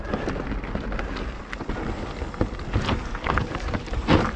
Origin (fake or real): real